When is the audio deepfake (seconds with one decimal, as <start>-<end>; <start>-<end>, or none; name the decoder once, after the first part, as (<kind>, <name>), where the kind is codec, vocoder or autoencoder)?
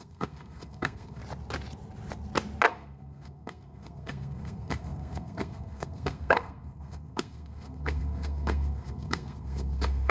0.0-1.2 (codec, SNAC); 2.7-10.1